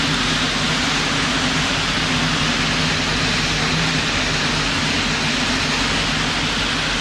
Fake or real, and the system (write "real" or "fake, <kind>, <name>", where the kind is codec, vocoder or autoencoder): real